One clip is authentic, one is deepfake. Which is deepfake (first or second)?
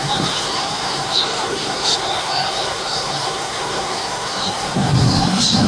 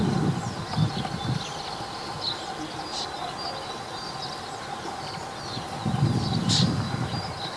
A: first